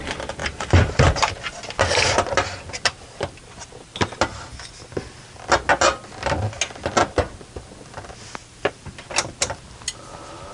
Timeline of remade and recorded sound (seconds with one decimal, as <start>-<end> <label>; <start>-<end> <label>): 0.0-0.4 recorded; 0.4-1.4 remade; 1.4-8.4 recorded; 8.4-9.1 remade; 9.1-10.5 recorded